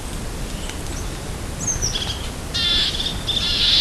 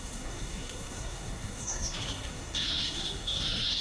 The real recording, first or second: first